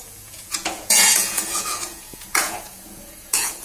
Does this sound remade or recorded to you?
remade